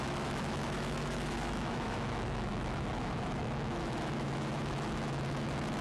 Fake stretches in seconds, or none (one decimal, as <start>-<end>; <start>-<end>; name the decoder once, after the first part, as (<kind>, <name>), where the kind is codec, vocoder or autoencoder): 0.0-5.8 (autoencoder, DAC-VAE)